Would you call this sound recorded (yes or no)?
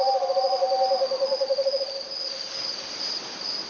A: yes